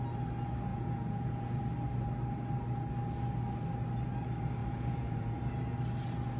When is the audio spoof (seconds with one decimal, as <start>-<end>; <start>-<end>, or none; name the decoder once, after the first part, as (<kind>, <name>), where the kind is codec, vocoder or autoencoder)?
0.7-1.6 (vocoder, Vocos); 4.6-5.4